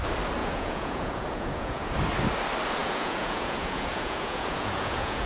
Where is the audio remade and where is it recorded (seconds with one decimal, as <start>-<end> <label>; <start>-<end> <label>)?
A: 0.0-0.4 recorded; 0.4-1.9 remade; 1.9-2.8 recorded; 2.8-5.3 remade